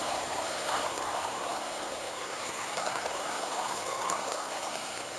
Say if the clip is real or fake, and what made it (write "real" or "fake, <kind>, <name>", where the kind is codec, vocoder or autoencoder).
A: fake, codec, SNAC